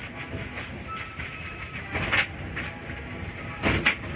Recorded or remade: recorded